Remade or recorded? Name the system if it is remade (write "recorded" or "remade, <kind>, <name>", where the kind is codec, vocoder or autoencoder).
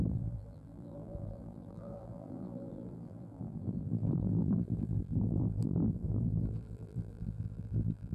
remade, vocoder, BigVGAN v2